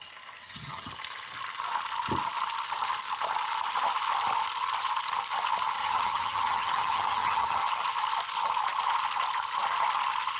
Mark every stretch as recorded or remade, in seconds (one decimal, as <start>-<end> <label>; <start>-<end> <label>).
0.0-0.4 recorded; 0.4-0.9 remade; 0.9-5.8 recorded; 5.8-7.6 remade; 7.6-10.4 recorded